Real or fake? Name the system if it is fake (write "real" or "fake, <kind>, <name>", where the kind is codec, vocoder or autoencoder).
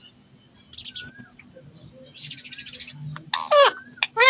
real